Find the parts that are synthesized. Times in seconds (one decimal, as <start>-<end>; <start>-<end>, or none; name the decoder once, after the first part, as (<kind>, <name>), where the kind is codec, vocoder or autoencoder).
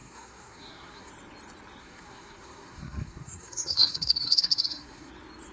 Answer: 0.0-1.1 (codec, SNAC); 1.8-5.1